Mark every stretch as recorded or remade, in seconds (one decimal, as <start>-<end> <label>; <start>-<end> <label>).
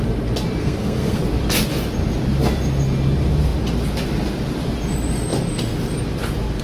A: 0.0-0.6 recorded; 0.6-1.2 remade; 1.2-6.6 recorded